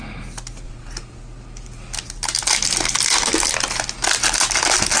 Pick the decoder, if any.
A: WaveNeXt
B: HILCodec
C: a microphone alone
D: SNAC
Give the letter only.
C